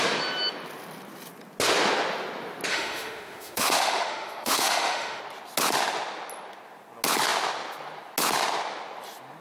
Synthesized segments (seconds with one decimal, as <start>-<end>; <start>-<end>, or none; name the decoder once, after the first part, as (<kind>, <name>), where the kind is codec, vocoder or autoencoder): 2.7-5.2 (autoencoder, DAC-VAE)